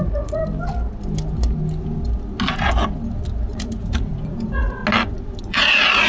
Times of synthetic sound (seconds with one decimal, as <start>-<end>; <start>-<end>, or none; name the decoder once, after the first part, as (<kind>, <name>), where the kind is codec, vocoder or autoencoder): 0.0-0.4 (vocoder, Vocos); 3.5-4.8; 5.4-6.1